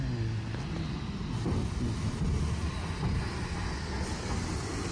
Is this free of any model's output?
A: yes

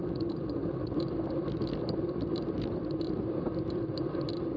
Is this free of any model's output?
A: yes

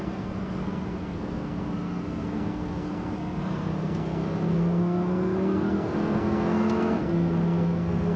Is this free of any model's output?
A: no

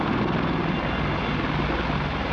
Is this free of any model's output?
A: yes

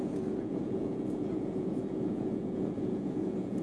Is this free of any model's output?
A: no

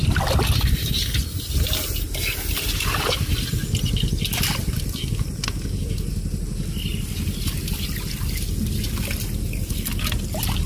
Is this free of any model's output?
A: yes